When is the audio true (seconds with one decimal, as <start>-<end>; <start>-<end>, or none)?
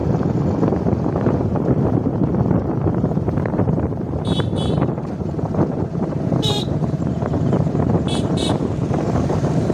0.0-0.9; 2.3-3.3